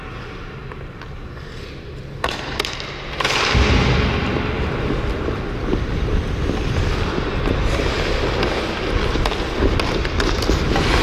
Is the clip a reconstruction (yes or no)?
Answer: no